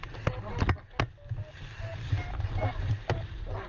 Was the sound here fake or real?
real